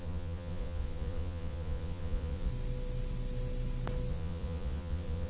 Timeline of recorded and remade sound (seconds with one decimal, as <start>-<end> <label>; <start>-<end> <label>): 0.0-2.5 remade; 2.5-4.1 recorded; 4.1-5.3 remade